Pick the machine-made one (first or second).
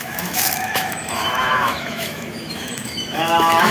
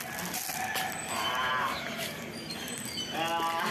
first